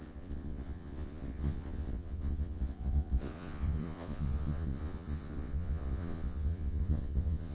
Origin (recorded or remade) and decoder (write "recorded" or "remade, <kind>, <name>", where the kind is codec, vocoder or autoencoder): remade, vocoder, Vocos